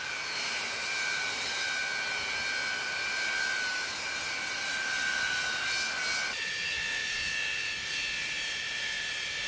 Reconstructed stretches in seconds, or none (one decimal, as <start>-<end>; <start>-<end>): none